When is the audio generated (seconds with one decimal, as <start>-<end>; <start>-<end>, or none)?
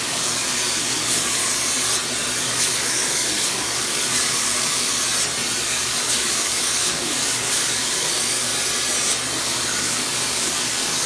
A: 0.0-1.4; 2.4-4.9; 5.6-8.5; 9.4-11.1